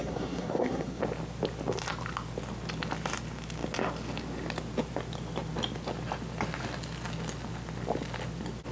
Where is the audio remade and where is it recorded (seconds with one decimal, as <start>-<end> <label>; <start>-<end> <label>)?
0.0-1.0 remade; 1.0-8.7 recorded